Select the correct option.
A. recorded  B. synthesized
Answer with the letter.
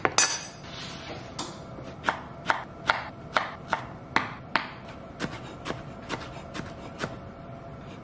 A